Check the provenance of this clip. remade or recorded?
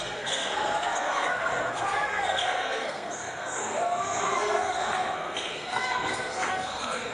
remade